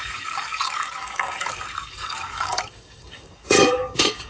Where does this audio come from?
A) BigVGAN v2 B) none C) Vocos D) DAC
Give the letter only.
D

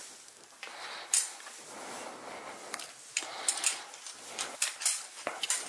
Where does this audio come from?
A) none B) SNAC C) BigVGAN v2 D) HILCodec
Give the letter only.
A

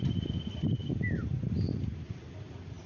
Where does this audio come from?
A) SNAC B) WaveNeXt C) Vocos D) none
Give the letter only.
D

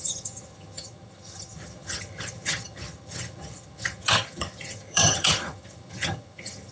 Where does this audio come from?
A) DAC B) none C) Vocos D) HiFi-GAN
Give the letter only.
D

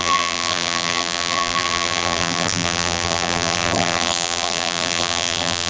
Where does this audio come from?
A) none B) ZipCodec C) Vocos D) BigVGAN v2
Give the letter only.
D